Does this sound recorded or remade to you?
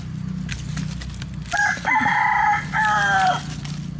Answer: recorded